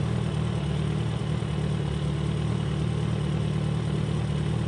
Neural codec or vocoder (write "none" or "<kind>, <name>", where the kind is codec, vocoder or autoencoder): none